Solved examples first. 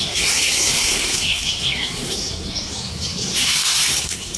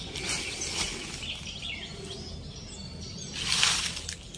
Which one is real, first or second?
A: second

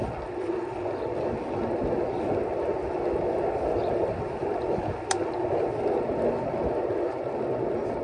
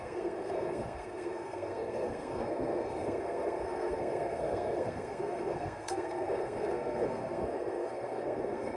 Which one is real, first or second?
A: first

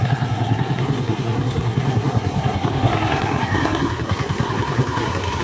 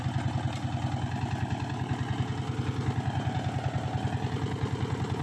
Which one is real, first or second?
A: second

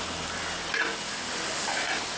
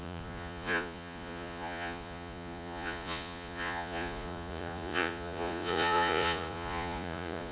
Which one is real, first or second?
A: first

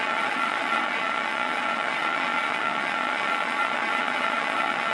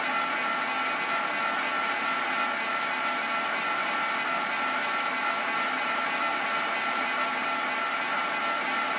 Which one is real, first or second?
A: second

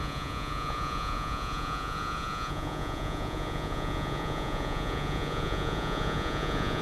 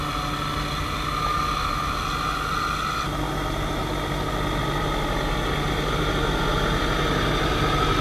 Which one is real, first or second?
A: second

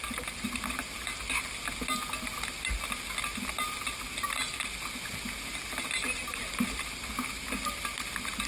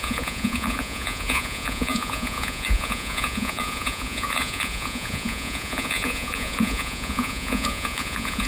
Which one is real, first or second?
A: first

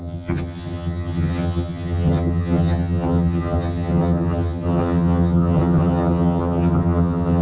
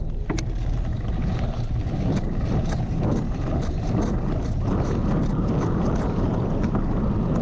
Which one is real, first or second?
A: second